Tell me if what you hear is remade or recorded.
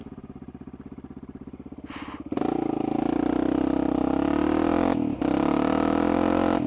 recorded